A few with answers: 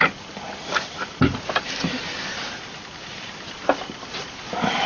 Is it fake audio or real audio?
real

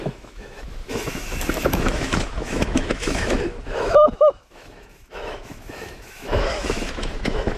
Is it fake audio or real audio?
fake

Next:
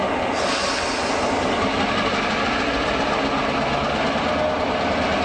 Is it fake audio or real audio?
real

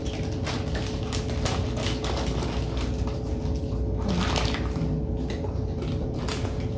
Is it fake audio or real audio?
real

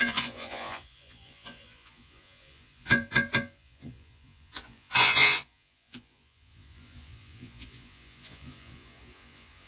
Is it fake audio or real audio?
fake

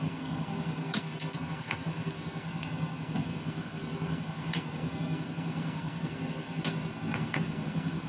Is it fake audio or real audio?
fake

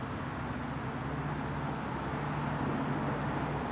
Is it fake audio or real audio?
real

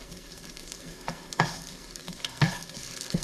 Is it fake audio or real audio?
fake